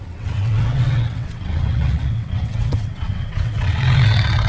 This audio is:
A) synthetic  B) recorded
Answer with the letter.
A